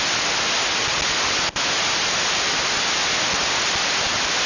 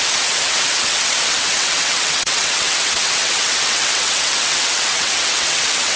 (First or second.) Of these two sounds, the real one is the first